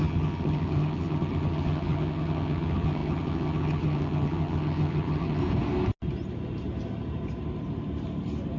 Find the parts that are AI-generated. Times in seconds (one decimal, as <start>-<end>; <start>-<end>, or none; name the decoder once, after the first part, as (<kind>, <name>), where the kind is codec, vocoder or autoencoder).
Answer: 0.0-5.4 (vocoder, HiFi-GAN)